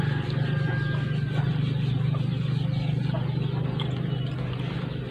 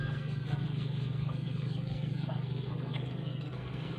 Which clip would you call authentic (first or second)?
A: first